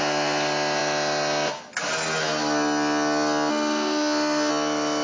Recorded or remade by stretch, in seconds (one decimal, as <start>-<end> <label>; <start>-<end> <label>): 0.0-3.5 recorded; 3.5-4.5 remade; 4.5-5.0 recorded